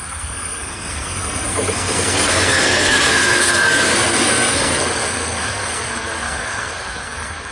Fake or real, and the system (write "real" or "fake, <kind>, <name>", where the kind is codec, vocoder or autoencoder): fake, codec, SNAC